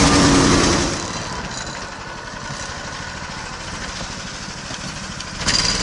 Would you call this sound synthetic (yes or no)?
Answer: no